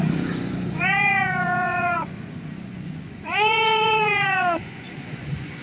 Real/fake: fake